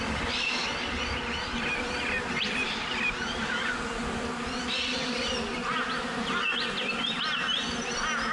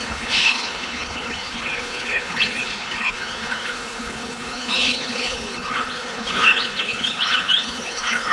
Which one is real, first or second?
first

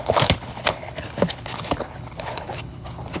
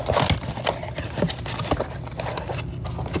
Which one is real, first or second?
second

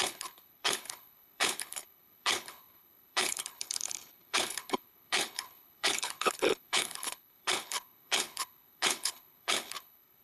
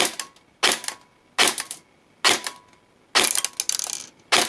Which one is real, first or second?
second